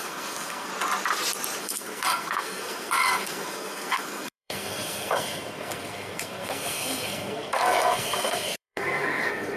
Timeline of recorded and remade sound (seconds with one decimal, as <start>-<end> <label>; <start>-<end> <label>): 0.0-0.7 remade; 0.7-1.6 recorded; 1.6-9.6 remade